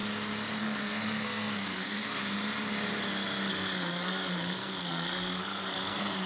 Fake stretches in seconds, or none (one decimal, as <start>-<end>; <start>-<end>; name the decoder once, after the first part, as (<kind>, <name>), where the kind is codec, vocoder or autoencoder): 0.6-2.2 (codec, SNAC); 3.5-6.3